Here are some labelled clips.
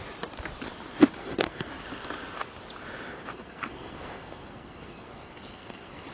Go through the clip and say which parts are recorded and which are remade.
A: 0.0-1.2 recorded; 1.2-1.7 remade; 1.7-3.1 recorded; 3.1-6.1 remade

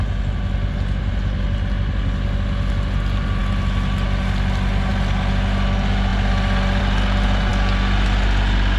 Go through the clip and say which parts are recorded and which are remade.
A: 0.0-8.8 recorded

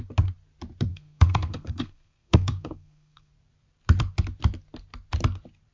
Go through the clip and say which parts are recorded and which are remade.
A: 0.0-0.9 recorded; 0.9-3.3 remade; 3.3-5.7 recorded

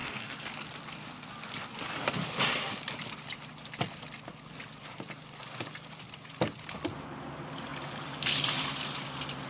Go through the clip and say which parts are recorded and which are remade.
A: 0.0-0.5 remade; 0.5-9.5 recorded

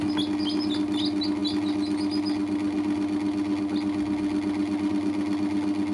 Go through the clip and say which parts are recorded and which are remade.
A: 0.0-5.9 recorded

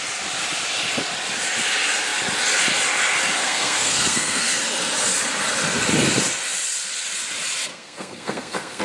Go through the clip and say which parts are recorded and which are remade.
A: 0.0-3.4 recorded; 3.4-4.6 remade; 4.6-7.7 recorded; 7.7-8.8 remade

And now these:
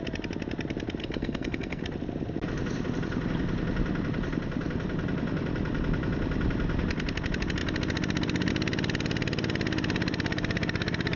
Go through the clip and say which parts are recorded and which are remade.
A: 0.0-1.0 recorded; 1.0-1.8 remade; 1.8-11.2 recorded

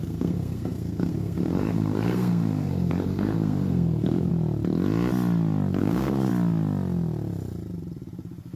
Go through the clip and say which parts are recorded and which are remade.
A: 0.0-4.3 remade; 4.3-5.8 recorded; 5.8-6.3 remade; 6.3-8.6 recorded